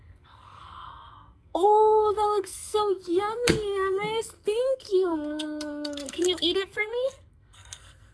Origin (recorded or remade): remade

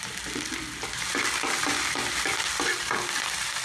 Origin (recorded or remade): recorded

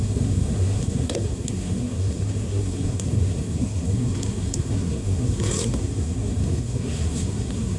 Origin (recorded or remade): remade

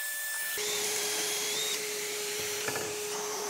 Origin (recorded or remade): remade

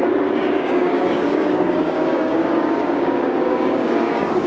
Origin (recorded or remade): remade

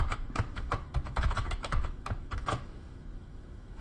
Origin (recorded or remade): remade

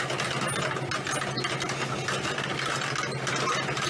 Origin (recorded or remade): recorded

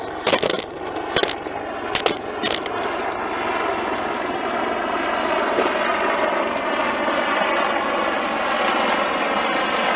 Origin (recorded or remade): recorded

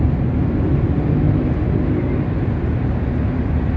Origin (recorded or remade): recorded